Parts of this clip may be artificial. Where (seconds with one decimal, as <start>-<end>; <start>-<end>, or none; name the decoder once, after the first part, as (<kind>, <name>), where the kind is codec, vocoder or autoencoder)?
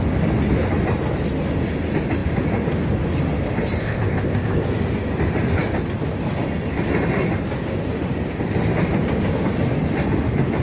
3.8-4.6 (codec, ZipCodec)